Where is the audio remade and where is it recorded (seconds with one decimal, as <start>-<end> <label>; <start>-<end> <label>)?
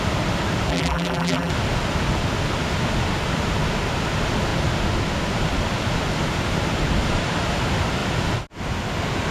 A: 0.0-0.7 recorded; 0.7-1.5 remade; 1.5-9.3 recorded